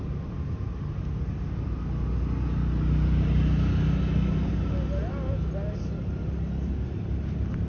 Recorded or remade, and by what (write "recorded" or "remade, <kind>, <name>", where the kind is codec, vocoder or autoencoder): recorded